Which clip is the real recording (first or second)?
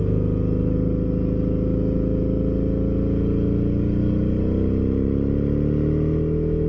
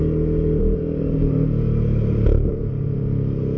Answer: first